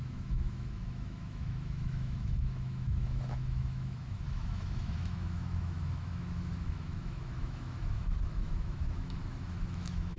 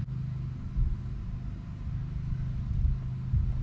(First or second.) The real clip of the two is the second